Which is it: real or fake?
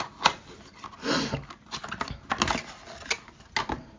real